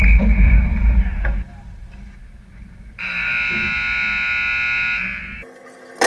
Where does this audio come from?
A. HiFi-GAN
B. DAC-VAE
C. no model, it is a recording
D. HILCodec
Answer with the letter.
C